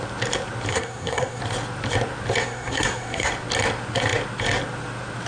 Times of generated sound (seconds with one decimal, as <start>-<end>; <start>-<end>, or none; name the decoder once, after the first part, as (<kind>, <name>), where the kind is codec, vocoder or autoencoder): 0.7-1.4 (codec, SNAC); 2.4-3.3